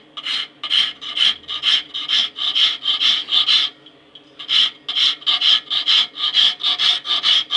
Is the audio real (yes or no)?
yes